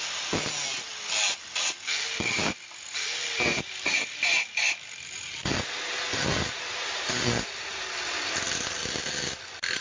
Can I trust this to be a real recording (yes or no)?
yes